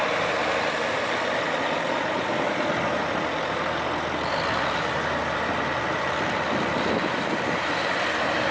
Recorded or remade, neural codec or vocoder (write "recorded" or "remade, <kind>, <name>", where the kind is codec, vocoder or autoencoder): remade, vocoder, BigVGAN v2